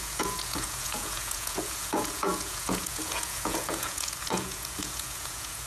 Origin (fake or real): fake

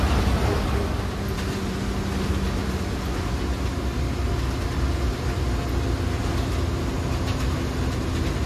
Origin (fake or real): real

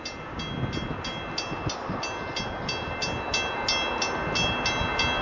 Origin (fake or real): real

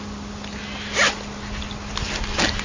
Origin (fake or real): real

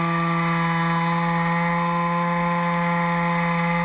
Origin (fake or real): real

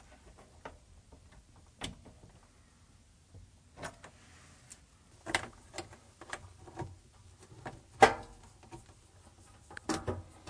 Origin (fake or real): real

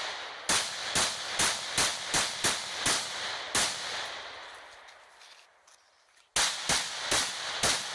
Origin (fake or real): real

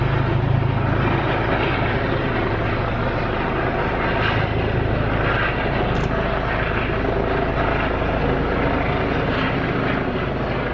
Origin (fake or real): real